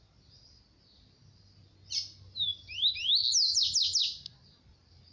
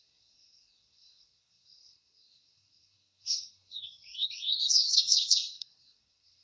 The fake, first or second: second